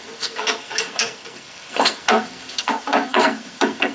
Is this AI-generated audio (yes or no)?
yes